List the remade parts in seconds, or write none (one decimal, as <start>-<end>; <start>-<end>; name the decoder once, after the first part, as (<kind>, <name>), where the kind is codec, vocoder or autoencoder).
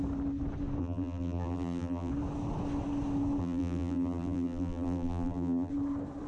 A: 0.8-2.1 (vocoder, BigVGAN v2); 3.4-5.7